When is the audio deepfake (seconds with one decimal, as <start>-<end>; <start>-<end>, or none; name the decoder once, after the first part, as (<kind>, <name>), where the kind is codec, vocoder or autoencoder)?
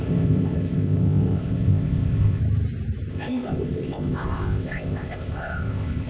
0.0-2.4 (codec, ZipCodec); 3.1-6.1